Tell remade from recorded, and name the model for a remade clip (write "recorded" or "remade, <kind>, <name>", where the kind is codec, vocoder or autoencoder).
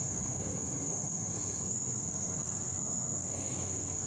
remade, codec, SNAC